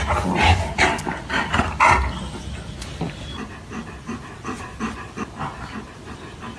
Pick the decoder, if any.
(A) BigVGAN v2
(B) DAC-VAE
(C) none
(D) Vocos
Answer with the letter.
C